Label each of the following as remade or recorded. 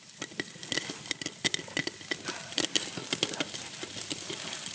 recorded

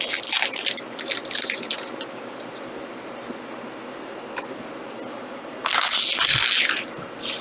recorded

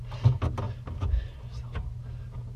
recorded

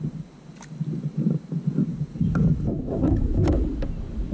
recorded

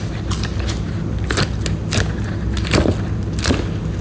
recorded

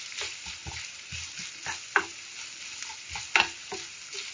recorded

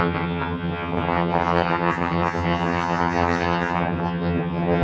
remade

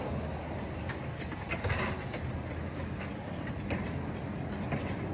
recorded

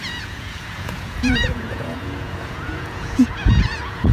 remade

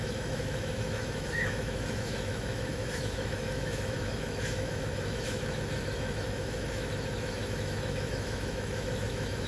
remade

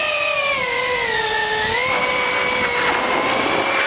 recorded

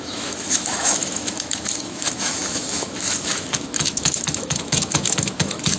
remade